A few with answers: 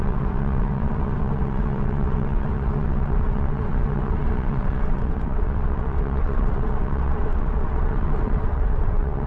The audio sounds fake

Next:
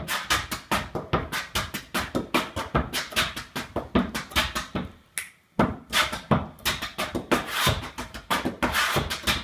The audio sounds real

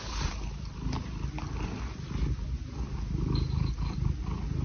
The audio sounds real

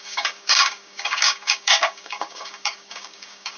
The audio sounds fake